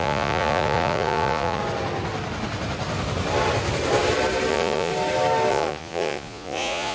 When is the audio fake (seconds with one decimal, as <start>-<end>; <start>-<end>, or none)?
0.0-1.6; 4.5-4.9; 5.5-6.9